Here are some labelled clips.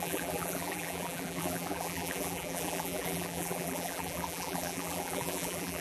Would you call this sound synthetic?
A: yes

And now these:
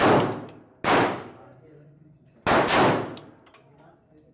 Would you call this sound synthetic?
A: no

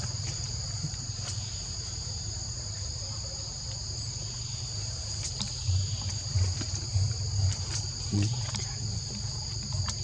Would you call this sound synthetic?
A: yes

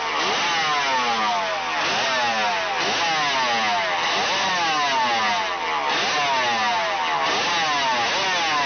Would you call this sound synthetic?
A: no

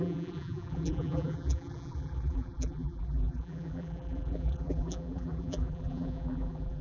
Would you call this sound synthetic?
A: yes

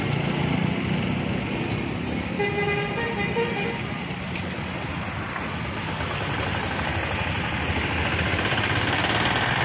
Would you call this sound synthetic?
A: no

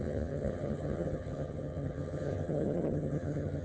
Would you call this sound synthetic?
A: yes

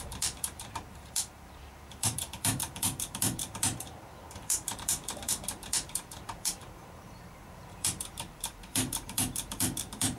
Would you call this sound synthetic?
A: yes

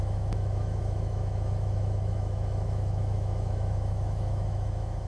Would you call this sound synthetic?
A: yes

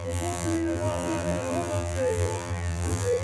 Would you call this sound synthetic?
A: yes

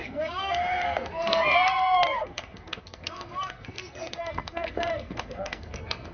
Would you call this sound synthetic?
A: yes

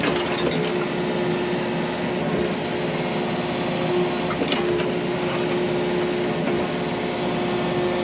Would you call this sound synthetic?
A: no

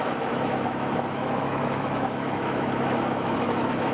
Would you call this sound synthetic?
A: yes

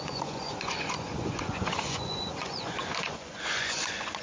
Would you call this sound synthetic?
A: yes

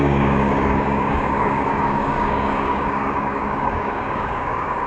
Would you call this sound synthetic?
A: yes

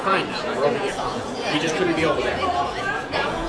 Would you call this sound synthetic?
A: yes